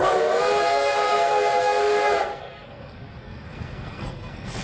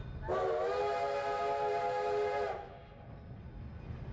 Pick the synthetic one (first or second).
first